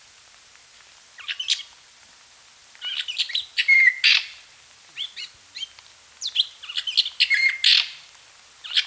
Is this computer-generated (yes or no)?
no